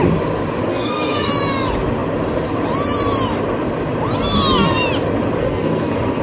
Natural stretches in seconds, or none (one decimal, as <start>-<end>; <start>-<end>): 0.0-0.7; 1.3-5.4